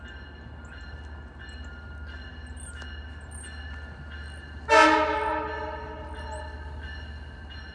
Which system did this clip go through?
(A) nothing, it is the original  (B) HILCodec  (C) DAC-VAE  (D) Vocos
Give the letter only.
A